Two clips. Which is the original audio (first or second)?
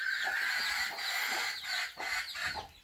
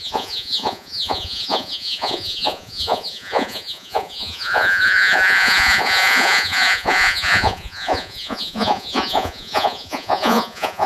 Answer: first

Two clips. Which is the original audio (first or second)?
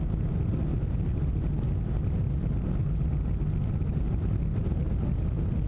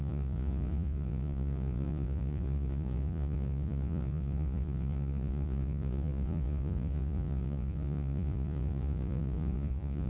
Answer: first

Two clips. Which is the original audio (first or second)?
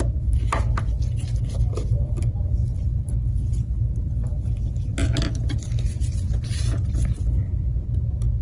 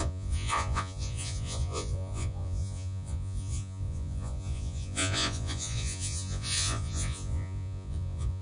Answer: first